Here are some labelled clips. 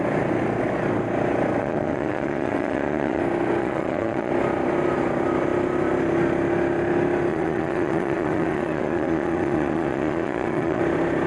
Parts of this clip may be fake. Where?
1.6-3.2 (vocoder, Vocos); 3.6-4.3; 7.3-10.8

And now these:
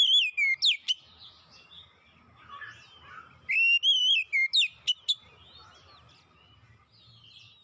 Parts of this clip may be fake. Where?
none

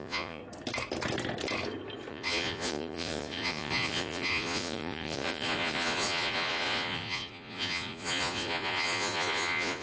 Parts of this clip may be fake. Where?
0.0-0.4 (vocoder, Vocos); 2.1-9.8

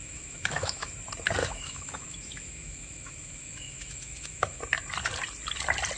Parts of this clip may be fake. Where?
0.0-0.9 (autoencoder, DAC-VAE); 1.4-4.6

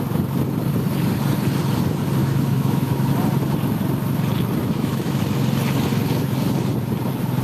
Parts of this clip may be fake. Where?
2.2-3.1 (autoencoder, DAC-VAE); 4.6-5.2

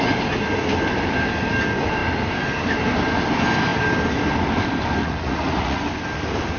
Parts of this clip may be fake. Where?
5.0-5.8 (vocoder, Vocos)

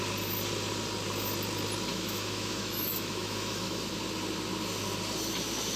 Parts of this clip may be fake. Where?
1.9-3.9 (autoencoder, DAC-VAE)

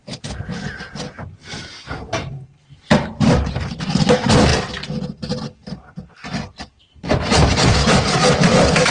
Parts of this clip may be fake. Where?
1.6-2.3 (vocoder, BigVGAN v2); 3.1-4.5; 6.8-8.9